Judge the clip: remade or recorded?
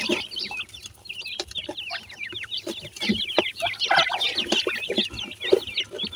recorded